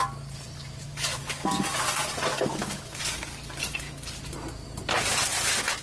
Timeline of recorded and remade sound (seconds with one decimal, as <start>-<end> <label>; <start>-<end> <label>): 0.0-0.9 recorded; 0.9-1.6 remade; 1.6-2.3 recorded; 2.3-4.2 remade; 4.2-5.8 recorded